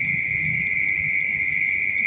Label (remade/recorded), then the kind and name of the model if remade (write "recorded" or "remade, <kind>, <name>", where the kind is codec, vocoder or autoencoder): recorded